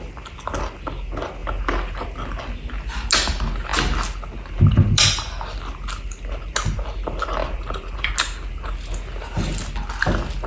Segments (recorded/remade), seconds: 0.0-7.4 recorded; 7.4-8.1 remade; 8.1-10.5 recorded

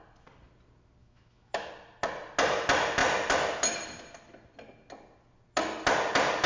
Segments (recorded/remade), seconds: 0.0-1.0 recorded; 1.0-1.7 remade; 1.7-6.5 recorded

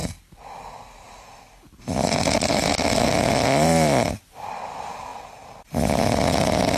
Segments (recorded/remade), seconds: 0.0-6.8 recorded